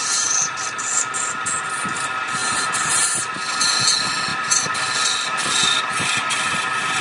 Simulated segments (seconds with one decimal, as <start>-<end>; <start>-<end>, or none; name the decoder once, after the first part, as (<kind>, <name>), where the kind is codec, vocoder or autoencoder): 0.0-0.9 (vocoder, BigVGAN v2); 2.4-3.0

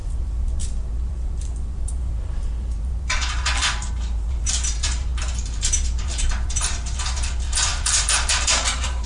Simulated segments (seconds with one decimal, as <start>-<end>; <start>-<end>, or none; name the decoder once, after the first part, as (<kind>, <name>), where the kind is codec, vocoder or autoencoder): 0.0-9.1 (vocoder, BigVGAN v2)